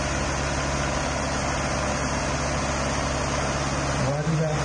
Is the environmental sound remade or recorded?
recorded